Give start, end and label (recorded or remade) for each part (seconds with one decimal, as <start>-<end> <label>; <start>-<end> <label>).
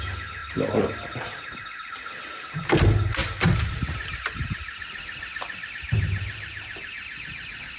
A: 0.0-0.4 recorded; 0.4-2.2 remade; 2.2-3.2 recorded; 3.2-5.7 remade; 5.7-7.8 recorded